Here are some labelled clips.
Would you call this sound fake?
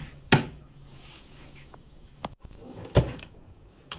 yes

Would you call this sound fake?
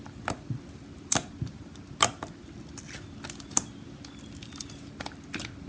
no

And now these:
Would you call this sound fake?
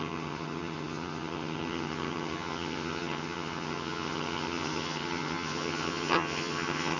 yes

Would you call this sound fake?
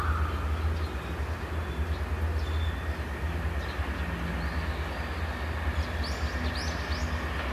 no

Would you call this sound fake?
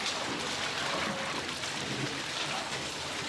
no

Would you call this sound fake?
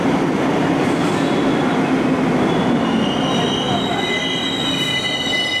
no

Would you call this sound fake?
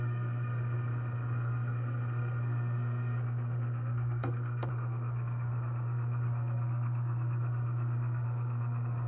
yes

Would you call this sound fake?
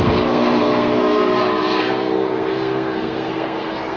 yes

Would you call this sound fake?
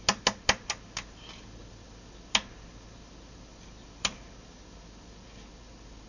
no